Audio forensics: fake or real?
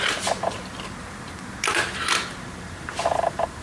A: fake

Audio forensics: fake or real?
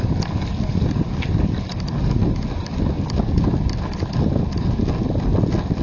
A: real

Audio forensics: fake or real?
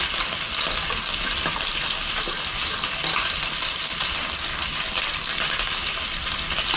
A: real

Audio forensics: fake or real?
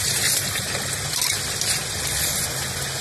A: real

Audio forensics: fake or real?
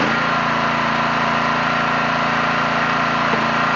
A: real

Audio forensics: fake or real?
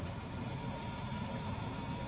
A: real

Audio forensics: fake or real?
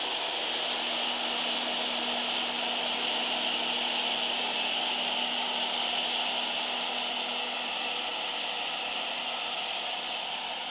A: real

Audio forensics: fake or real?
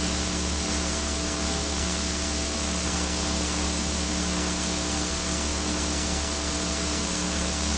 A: fake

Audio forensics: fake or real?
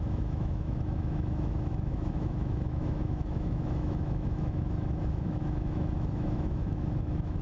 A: fake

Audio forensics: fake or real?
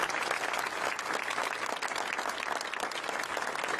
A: real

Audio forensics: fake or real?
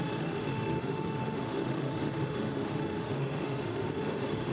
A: fake